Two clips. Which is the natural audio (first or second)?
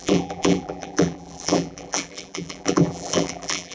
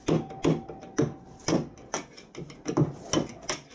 second